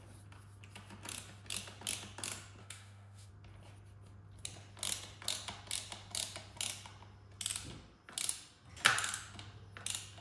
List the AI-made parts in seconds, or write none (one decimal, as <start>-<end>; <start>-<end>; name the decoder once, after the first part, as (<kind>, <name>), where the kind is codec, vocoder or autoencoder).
2.6-3.3 (autoencoder, DAC-VAE)